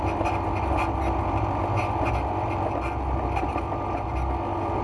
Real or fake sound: real